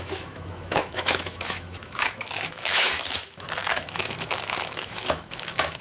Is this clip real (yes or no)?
no